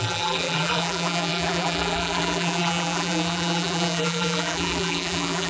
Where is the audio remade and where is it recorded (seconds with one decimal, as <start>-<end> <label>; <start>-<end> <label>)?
0.0-5.5 remade

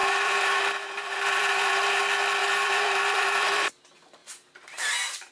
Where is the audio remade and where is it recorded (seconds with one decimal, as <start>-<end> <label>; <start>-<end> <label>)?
0.0-2.0 remade; 2.0-2.4 recorded; 2.4-3.7 remade; 3.7-4.2 recorded; 4.2-5.3 remade

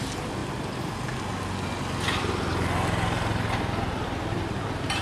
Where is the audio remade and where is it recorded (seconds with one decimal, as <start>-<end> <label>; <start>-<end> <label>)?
0.0-0.4 recorded; 0.4-1.1 remade; 1.1-5.0 recorded